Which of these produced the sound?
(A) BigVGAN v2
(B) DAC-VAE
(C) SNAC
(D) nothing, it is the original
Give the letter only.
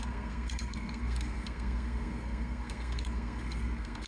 C